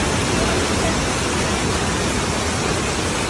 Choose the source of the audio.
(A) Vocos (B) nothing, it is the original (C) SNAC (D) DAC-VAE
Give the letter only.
B